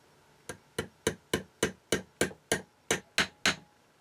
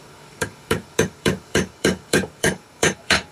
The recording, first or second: first